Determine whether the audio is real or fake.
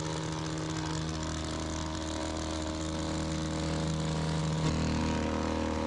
real